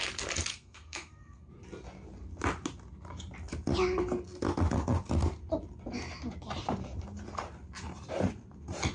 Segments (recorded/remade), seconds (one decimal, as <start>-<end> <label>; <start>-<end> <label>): 0.0-0.5 recorded; 0.5-1.5 remade; 1.5-8.9 recorded